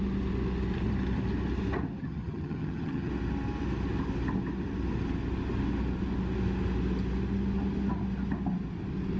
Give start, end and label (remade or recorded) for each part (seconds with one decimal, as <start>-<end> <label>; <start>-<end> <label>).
0.0-2.0 recorded; 2.0-3.1 remade; 3.1-9.2 recorded